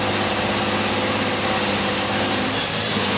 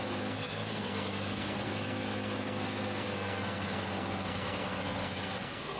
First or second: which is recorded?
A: first